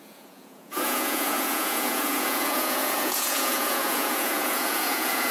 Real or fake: fake